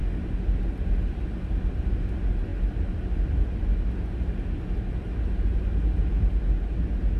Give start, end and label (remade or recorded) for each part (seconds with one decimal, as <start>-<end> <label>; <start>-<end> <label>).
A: 0.0-7.2 recorded